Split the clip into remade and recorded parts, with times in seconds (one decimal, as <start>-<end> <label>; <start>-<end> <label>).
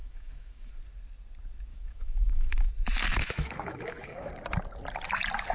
0.0-0.7 remade; 0.7-1.7 recorded; 1.7-2.7 remade; 2.7-3.1 recorded; 3.1-4.3 remade; 4.3-5.5 recorded